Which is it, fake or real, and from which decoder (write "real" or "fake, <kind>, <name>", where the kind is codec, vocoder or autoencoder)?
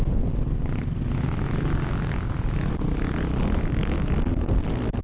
real